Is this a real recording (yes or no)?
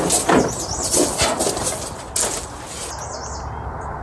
yes